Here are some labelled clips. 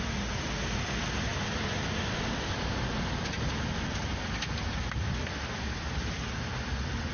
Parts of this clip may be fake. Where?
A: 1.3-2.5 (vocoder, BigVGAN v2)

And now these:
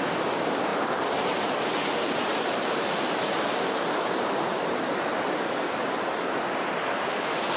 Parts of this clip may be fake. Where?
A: 0.7-1.5 (vocoder, BigVGAN v2); 2.2-5.1

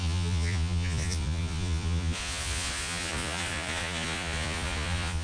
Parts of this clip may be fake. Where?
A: 0.0-5.2 (vocoder, Vocos)

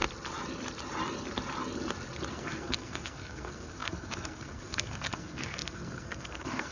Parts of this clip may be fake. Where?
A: 2.3-6.7 (codec, SNAC)

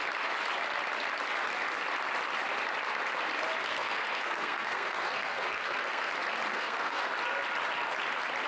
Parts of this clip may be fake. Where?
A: 3.7-6.1 (codec, SNAC); 6.5-7.1

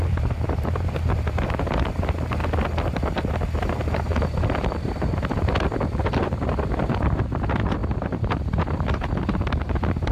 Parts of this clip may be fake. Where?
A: 0.0-2.4 (vocoder, BigVGAN v2); 4.8-10.1

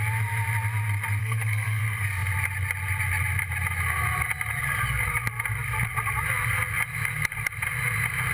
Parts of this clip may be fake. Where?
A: 1.2-1.8 (codec, SNAC)